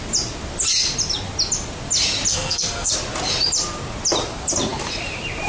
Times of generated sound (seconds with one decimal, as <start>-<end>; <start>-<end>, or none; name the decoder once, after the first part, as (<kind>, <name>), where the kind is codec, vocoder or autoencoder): 2.3-2.9 (codec, SNAC)